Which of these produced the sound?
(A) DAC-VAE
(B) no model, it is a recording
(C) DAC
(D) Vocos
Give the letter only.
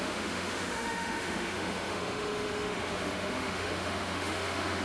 A